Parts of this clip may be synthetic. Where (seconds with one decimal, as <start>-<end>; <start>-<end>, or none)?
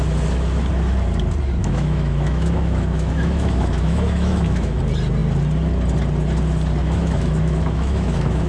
1.6-4.8; 6.8-8.5